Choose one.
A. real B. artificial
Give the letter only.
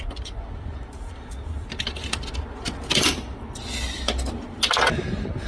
A